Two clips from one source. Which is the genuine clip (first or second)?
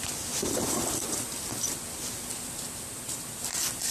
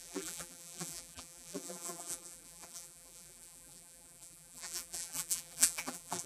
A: first